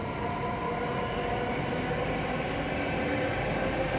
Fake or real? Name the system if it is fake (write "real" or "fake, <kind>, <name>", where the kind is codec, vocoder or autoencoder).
real